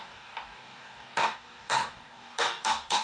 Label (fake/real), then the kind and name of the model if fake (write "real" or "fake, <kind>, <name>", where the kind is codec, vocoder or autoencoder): fake, codec, DAC